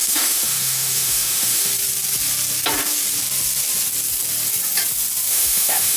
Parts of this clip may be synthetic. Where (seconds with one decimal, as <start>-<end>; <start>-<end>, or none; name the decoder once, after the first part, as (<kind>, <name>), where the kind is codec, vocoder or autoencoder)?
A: 0.0-1.7 (autoencoder, DAC-VAE); 5.3-6.0